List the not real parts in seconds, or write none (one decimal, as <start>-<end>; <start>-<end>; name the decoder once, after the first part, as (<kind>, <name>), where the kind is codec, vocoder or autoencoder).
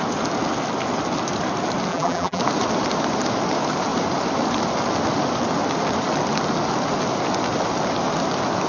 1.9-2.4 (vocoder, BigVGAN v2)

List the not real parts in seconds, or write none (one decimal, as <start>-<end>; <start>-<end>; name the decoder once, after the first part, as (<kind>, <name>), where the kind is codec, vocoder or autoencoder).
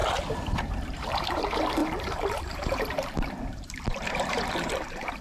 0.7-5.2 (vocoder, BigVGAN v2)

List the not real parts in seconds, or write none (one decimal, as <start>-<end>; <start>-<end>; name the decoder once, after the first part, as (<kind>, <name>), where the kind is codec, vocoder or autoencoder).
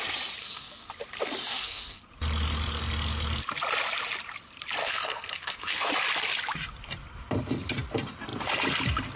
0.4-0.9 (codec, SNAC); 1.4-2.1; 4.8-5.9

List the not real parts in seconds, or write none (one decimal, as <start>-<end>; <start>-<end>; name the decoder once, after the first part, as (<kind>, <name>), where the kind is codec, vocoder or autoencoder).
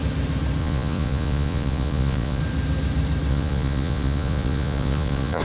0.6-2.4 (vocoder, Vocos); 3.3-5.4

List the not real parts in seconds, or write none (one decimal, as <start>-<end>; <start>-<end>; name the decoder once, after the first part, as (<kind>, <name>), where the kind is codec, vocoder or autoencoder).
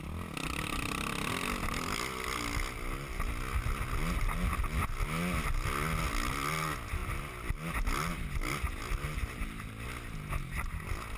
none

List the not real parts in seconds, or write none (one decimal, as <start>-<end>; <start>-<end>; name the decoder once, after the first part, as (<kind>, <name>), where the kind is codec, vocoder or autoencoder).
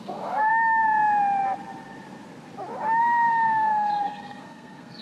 0.0-0.5 (codec, SNAC); 3.0-5.0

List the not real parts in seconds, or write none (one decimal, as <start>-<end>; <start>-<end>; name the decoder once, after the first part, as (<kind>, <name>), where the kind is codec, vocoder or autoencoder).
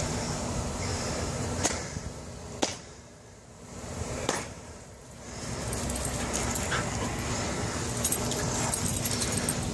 0.9-2.2 (vocoder, BigVGAN v2); 2.7-5.5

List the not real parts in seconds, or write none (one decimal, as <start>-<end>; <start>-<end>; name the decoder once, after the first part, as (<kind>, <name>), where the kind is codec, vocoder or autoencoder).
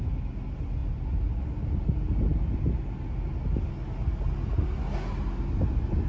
none